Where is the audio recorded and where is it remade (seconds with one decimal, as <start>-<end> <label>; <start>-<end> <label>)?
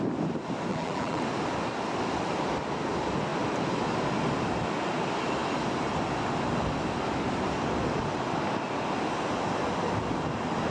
0.0-0.7 recorded; 0.7-1.2 remade; 1.2-10.7 recorded